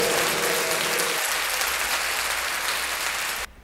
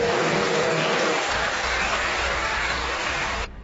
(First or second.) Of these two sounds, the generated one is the second